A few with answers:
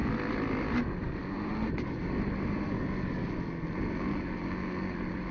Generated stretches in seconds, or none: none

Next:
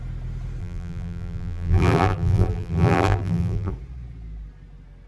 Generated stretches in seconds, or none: 0.6-3.7 (vocoder, BigVGAN v2)